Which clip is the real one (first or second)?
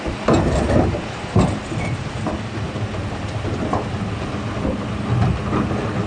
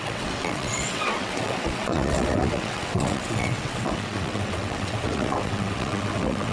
first